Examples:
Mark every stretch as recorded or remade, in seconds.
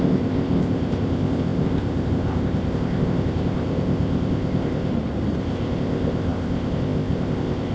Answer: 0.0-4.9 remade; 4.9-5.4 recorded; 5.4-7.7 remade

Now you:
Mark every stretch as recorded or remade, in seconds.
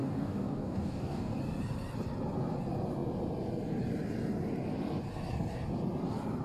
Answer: 0.0-1.4 remade; 1.4-6.4 recorded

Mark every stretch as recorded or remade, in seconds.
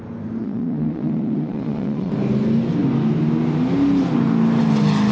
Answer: 0.0-0.4 recorded; 0.4-2.1 remade; 2.1-5.1 recorded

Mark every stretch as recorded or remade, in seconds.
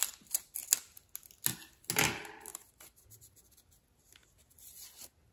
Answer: 0.0-5.3 recorded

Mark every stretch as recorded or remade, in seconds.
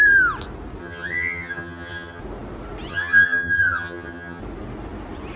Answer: 0.0-0.8 recorded; 0.8-2.2 remade; 2.2-2.9 recorded; 2.9-4.4 remade; 4.4-5.4 recorded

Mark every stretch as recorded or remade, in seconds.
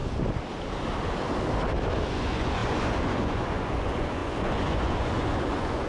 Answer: 0.0-2.1 recorded; 2.1-5.9 remade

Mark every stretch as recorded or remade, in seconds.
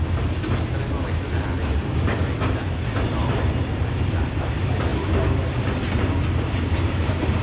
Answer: 0.0-2.1 recorded; 2.1-4.5 remade; 4.5-7.4 recorded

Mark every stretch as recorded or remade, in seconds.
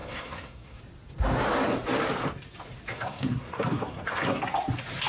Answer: 0.0-0.8 remade; 0.8-2.9 recorded; 2.9-4.4 remade; 4.4-5.1 recorded